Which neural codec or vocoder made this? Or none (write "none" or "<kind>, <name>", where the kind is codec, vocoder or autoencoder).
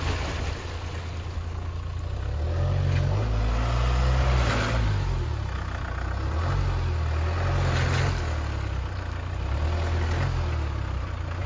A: none